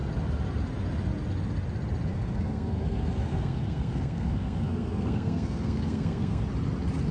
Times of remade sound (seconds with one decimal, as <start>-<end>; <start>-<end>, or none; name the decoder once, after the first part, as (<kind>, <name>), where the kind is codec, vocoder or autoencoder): 2.1-6.4 (codec, SNAC)